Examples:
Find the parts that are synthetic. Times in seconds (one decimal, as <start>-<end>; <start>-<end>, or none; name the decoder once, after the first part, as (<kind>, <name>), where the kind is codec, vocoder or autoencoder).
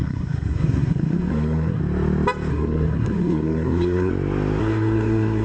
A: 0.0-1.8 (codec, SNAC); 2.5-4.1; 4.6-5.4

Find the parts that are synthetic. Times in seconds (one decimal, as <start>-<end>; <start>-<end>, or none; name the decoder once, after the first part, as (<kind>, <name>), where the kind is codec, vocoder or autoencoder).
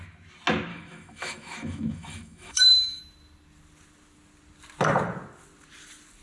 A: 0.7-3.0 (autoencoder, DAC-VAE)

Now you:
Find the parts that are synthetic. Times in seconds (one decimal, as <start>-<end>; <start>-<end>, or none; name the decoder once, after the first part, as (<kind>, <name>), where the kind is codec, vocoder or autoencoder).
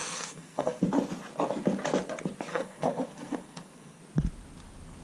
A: 0.0-0.8 (codec, SNAC); 2.5-4.0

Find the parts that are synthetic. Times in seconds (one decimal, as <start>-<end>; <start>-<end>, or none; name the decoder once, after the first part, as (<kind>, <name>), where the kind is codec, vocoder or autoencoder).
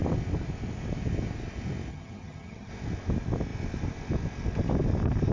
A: 1.9-2.7 (vocoder, HiFi-GAN)